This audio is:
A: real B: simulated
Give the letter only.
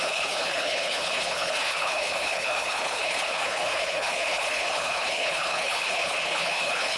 B